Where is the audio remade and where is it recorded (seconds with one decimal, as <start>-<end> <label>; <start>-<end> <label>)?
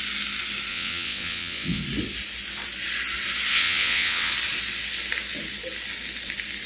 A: 0.0-0.7 recorded; 0.7-1.8 remade; 1.8-3.5 recorded; 3.5-4.3 remade; 4.3-6.7 recorded